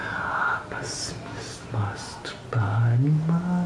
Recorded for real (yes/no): yes